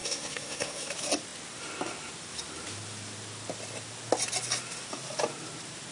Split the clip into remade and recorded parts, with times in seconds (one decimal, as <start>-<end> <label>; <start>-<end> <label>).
0.0-0.9 remade; 0.9-5.9 recorded